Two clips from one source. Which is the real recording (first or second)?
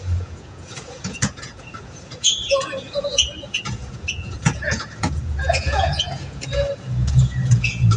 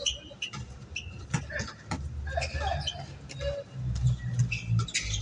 second